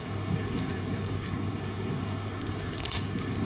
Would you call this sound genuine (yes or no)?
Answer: no